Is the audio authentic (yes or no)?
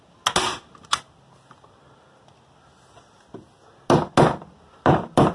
yes